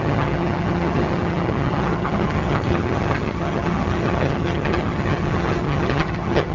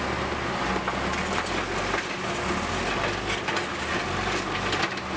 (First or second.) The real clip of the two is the second